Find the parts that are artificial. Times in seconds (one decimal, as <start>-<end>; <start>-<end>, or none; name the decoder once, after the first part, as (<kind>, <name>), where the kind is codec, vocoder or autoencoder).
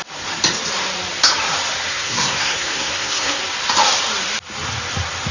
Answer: 1.9-3.4 (codec, SNAC)